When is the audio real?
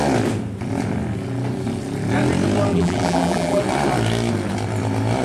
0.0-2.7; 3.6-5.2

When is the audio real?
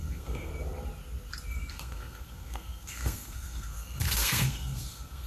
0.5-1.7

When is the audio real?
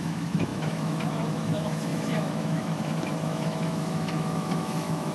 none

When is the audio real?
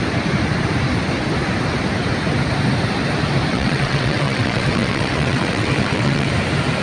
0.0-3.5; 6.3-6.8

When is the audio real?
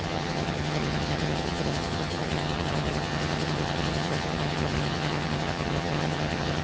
none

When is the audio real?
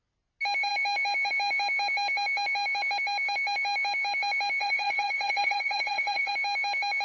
0.0-4.6; 6.3-7.0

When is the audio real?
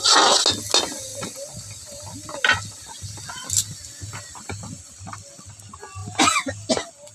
0.0-7.1